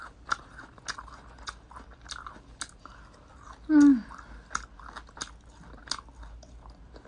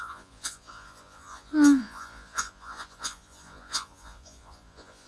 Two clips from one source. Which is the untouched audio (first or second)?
first